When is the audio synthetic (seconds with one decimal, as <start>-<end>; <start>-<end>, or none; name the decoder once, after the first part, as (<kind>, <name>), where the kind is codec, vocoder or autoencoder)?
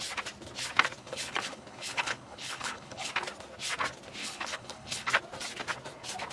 1.0-3.1 (codec, HILCodec); 4.2-5.1